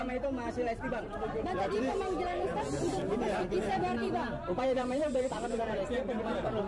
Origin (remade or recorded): remade